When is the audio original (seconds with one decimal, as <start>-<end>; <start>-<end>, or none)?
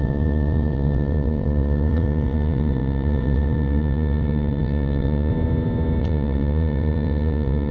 5.3-6.0